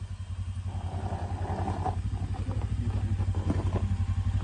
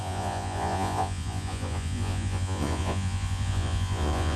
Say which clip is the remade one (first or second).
second